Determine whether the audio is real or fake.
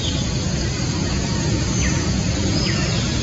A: real